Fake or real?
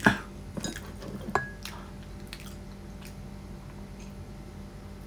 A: real